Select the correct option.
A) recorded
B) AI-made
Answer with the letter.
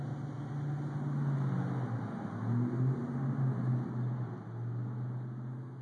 A